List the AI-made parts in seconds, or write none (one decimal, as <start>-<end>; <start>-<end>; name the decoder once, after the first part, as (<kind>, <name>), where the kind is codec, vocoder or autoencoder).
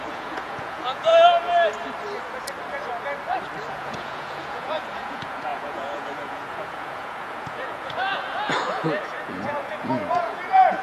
0.0-1.1 (vocoder, Vocos); 3.7-10.8